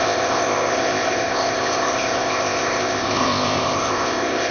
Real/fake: fake